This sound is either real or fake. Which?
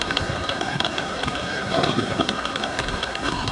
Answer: fake